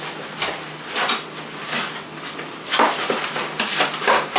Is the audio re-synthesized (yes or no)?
no